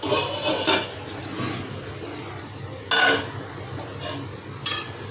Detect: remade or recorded recorded